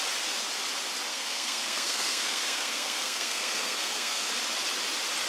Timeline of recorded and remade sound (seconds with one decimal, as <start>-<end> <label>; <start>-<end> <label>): 0.0-1.1 recorded; 1.1-4.3 remade; 4.3-5.3 recorded